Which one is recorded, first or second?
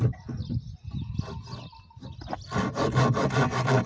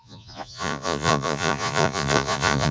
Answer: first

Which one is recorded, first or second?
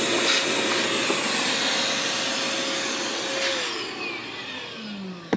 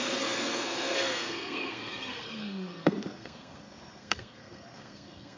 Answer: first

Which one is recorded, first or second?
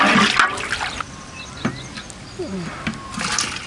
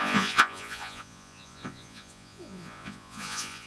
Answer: first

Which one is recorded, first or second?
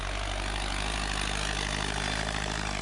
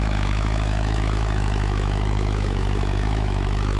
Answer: first